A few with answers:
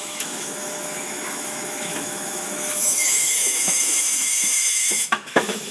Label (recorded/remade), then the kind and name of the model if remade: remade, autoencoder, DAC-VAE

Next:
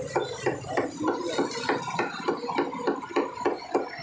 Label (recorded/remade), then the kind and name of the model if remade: recorded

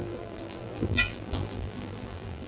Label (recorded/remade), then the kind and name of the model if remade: remade, vocoder, BigVGAN v2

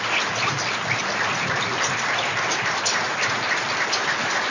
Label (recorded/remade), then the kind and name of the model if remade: recorded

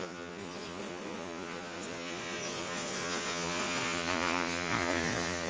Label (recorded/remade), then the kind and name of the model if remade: remade, vocoder, Vocos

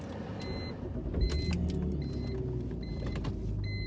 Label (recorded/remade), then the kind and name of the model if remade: recorded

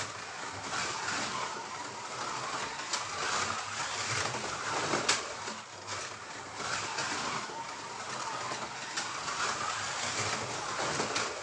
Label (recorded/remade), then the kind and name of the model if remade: recorded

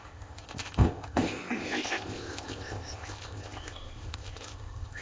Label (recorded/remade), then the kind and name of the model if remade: remade, codec, ZipCodec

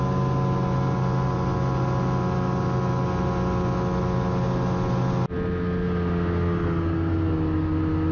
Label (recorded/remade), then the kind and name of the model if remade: recorded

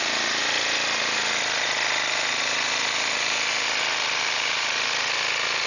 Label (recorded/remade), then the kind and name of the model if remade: recorded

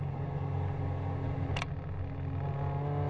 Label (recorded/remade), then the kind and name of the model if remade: recorded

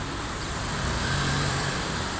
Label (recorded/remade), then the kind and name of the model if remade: remade, vocoder, BigVGAN v2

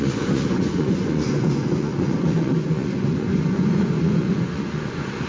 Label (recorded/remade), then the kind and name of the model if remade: remade, vocoder, Vocos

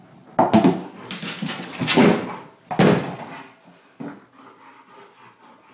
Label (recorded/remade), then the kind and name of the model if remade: recorded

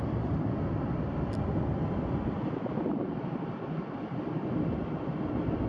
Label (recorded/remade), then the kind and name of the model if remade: recorded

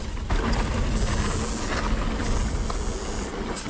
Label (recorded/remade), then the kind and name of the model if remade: recorded